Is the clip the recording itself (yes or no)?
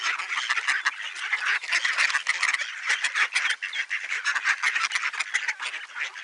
yes